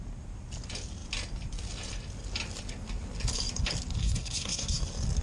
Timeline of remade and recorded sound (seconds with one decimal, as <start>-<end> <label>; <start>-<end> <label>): 0.0-4.0 recorded; 4.0-4.8 remade; 4.8-5.2 recorded